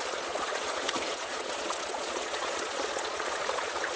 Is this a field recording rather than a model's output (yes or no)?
no